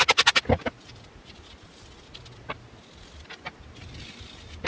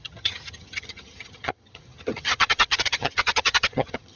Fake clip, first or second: second